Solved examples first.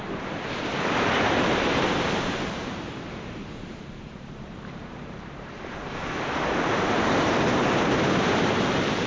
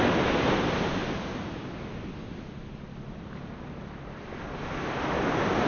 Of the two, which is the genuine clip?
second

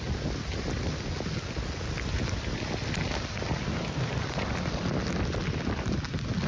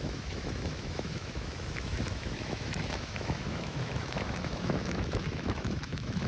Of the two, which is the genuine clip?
first